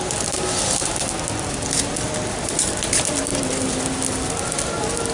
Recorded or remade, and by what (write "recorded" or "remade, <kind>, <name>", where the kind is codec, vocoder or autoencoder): recorded